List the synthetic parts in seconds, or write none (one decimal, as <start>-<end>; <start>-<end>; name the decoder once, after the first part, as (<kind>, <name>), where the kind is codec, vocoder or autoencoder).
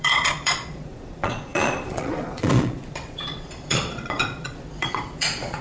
0.0-5.6 (vocoder, Vocos)